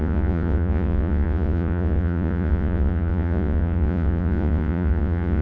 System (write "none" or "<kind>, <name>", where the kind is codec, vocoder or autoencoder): vocoder, Vocos